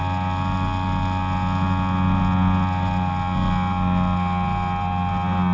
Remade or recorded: recorded